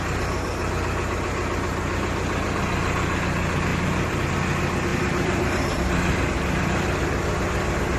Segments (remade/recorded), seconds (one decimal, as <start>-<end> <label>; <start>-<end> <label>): 0.0-3.7 recorded; 3.7-4.2 remade; 4.2-4.9 recorded; 4.9-5.9 remade; 5.9-8.0 recorded